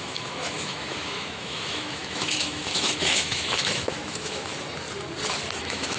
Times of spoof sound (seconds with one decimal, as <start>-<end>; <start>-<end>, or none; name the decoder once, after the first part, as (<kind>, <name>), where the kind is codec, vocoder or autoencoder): 0.0-4.5 (autoencoder, DAC-VAE); 5.6-6.0

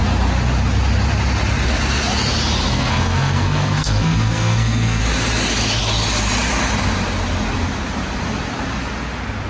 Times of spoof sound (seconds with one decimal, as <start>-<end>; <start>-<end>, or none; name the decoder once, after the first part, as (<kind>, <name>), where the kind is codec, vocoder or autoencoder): 2.7-5.0 (codec, SNAC)